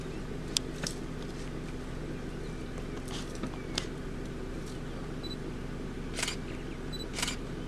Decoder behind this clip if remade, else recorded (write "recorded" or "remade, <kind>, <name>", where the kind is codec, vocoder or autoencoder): recorded